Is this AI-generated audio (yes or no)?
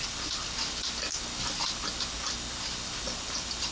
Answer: no